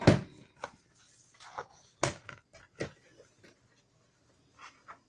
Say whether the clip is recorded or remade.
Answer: recorded